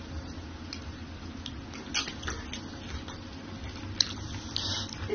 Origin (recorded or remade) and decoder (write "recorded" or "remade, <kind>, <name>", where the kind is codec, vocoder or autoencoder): recorded